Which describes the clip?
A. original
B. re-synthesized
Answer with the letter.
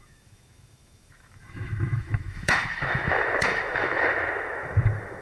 B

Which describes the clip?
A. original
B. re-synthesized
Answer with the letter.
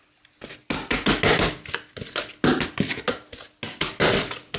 A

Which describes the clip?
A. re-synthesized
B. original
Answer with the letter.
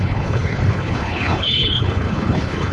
A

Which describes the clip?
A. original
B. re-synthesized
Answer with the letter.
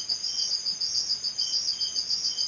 A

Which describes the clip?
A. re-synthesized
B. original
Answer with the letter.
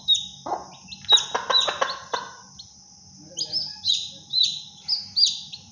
B